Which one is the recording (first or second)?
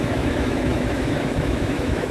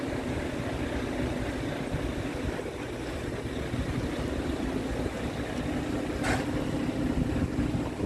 second